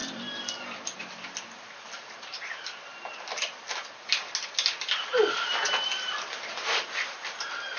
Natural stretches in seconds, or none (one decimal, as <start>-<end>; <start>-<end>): 0.8-5.5; 6.1-7.8